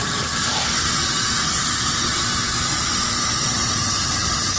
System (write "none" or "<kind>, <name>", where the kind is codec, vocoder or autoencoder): none